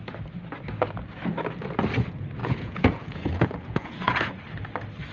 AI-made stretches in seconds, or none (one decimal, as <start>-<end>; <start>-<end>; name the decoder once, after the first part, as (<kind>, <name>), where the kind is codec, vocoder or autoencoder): 2.4-4.3 (vocoder, Vocos)